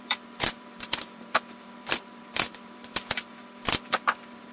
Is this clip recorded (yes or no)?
no